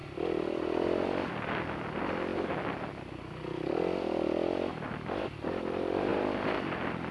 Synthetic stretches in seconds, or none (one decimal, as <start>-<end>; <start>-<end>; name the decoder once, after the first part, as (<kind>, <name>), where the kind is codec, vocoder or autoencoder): 0.0-1.3 (vocoder, BigVGAN v2); 6.1-7.1